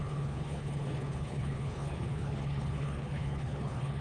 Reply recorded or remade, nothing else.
remade